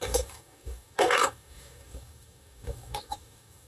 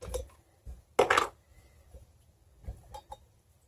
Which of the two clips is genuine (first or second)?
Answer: second